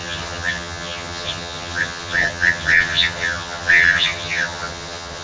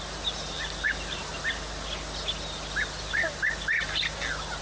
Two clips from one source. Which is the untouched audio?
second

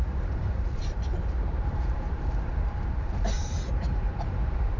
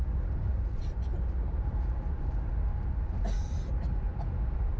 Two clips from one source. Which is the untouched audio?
second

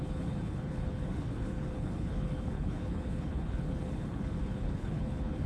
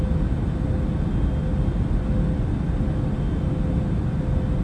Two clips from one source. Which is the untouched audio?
second